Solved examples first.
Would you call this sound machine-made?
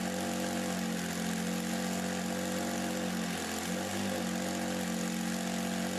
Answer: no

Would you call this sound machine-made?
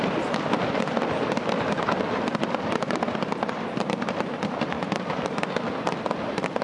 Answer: no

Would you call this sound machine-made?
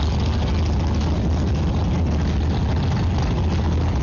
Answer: no